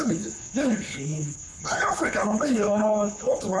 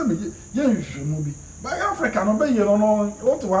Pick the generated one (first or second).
first